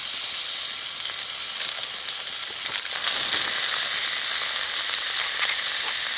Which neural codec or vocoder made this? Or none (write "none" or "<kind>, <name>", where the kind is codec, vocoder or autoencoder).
none